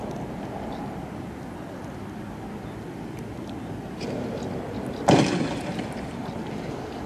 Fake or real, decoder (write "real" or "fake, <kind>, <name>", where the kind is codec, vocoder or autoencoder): real